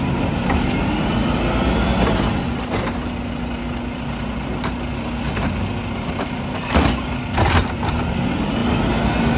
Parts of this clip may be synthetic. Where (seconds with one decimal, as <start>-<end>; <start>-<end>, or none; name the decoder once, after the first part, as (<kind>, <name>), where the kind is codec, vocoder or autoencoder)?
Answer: none